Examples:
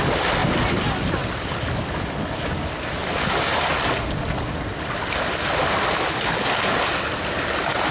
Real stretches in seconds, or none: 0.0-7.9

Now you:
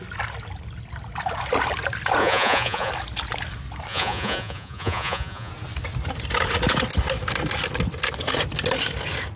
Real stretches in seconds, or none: 0.0-2.2; 2.9-3.9; 5.5-9.4

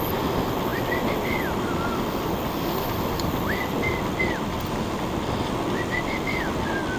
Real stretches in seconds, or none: 0.0-7.0

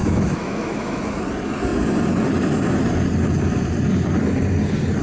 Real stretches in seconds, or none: 1.0-5.0

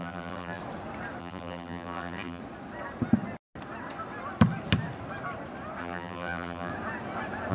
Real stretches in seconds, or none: 0.6-1.2; 2.4-5.8; 6.7-7.5

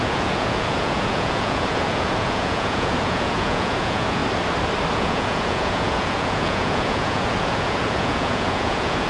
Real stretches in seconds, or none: 4.2-4.9